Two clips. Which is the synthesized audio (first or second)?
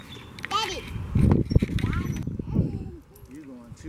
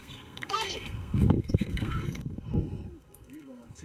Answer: second